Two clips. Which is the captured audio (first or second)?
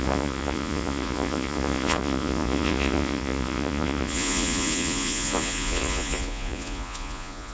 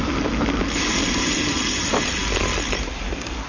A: second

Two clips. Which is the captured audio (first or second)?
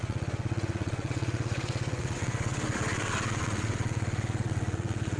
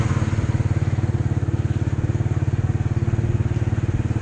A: second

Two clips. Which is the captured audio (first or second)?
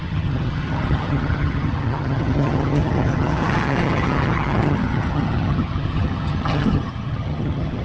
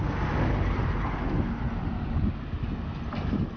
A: second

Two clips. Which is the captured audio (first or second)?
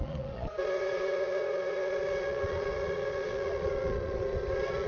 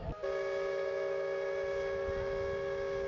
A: second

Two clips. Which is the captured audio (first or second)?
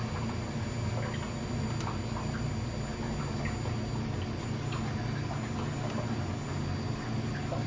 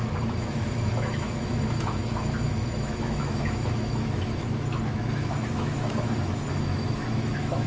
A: first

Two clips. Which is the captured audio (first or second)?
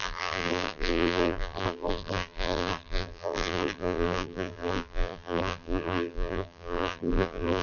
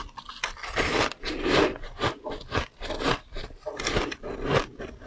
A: second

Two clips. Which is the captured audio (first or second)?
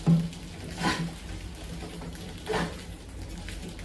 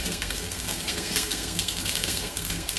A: first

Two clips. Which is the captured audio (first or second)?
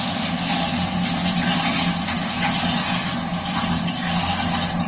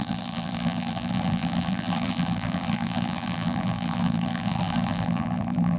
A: first